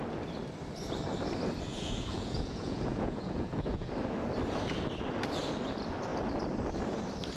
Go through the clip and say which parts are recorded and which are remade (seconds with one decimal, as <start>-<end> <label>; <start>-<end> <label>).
0.0-1.7 recorded; 1.7-3.9 remade; 3.9-7.4 recorded